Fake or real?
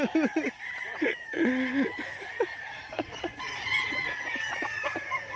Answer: fake